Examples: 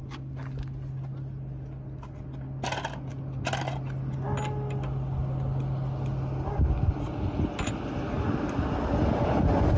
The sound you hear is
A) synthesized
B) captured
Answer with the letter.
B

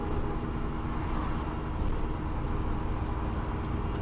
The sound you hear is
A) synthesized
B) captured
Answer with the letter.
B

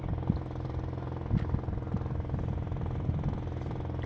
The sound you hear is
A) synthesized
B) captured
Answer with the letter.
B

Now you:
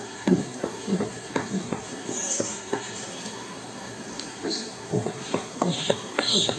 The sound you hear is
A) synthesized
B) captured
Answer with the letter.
A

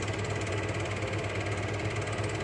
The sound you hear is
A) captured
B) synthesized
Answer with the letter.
A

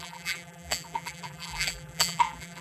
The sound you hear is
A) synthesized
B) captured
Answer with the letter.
A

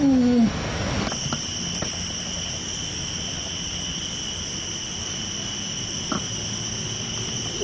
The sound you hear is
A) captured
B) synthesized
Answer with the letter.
A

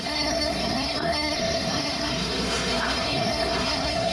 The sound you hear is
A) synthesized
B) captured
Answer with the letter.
A